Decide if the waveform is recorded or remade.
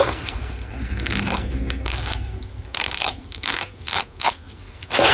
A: remade